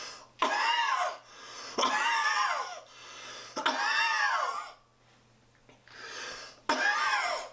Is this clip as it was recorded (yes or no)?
yes